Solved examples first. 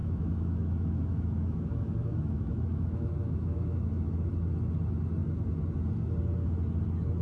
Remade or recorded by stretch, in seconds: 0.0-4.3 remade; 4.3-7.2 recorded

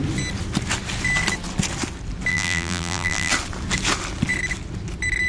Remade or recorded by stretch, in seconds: 0.0-2.3 recorded; 2.3-3.3 remade; 3.3-5.3 recorded

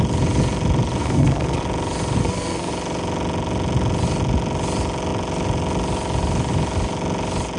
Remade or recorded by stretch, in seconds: 0.0-1.0 recorded; 1.0-1.6 remade; 1.6-2.2 recorded; 2.2-2.7 remade; 2.7-7.6 recorded

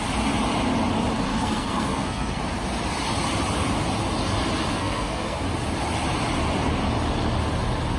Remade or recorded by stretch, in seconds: 0.0-1.3 recorded; 1.3-2.4 remade; 2.4-4.7 recorded; 4.7-5.4 remade; 5.4-8.0 recorded

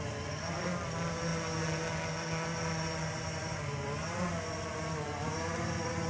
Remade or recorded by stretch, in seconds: 0.0-6.1 recorded

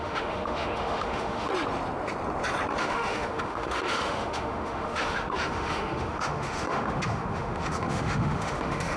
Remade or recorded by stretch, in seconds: 0.0-1.5 remade; 1.5-2.8 recorded; 2.8-9.0 remade

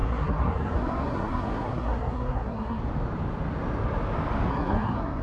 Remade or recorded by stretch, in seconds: 0.0-2.8 remade; 2.8-4.5 recorded; 4.5-5.2 remade